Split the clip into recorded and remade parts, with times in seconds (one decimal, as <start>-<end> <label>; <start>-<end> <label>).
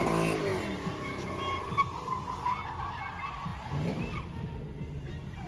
0.0-5.5 recorded